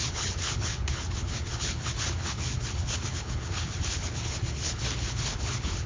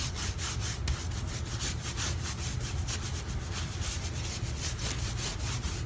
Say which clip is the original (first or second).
second